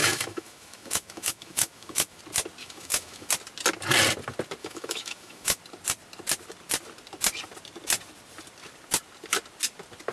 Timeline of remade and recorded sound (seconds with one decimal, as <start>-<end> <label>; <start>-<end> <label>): 0.0-2.2 remade; 2.2-2.6 recorded; 2.6-3.3 remade; 3.3-4.6 recorded; 4.6-5.6 remade; 5.6-10.1 recorded